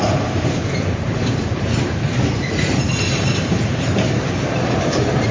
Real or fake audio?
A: fake